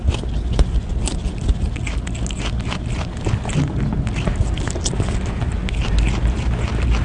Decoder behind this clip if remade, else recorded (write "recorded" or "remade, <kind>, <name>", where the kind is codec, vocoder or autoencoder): recorded